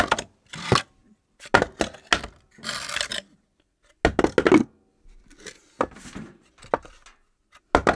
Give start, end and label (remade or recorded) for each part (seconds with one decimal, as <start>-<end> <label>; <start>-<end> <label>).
0.0-8.0 recorded